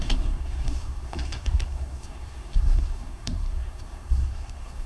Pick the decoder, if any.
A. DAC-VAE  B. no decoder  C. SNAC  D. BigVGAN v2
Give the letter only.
C